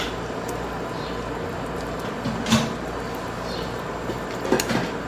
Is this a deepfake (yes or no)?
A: no